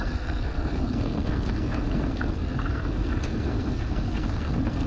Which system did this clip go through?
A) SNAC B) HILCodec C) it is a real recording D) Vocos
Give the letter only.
A